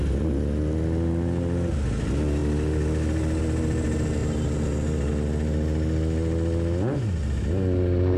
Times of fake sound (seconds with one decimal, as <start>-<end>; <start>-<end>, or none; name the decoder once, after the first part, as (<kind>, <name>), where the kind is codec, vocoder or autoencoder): 4.2-5.1 (vocoder, BigVGAN v2)